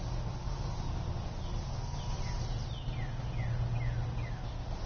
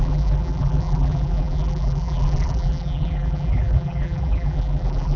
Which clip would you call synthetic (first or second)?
second